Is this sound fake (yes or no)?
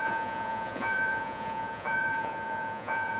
yes